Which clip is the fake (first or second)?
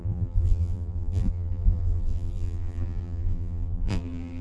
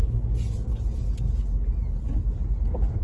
first